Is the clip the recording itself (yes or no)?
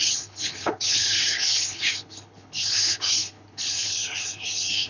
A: no